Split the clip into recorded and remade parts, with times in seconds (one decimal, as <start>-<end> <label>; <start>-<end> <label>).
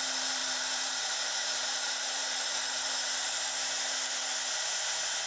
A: 0.0-0.4 recorded; 0.4-3.1 remade; 3.1-5.3 recorded